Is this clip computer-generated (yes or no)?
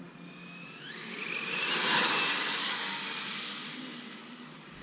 no